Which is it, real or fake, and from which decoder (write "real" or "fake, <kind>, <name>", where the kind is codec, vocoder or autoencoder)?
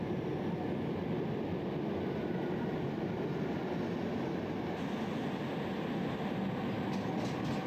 real